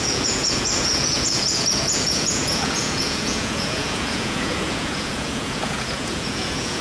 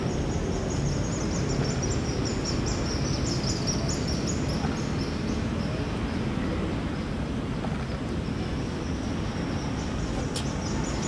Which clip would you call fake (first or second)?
first